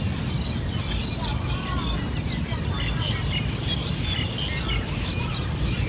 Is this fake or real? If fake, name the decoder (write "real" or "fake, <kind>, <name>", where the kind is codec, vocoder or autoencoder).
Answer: real